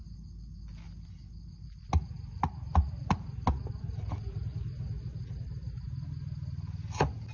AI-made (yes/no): no